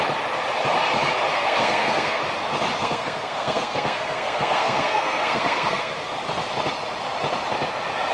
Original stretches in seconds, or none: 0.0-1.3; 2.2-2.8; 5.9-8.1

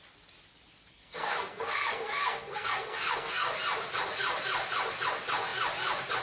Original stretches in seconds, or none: 0.0-0.9; 3.5-6.2

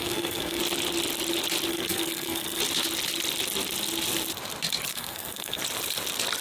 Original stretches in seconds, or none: 0.6-1.7; 2.6-4.9; 5.6-6.4

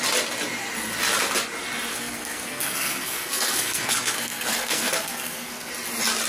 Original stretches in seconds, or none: 0.0-1.9; 5.7-6.3

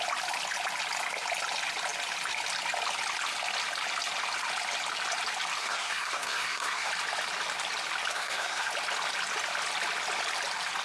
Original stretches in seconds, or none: 0.0-5.6; 6.9-8.1; 8.7-10.8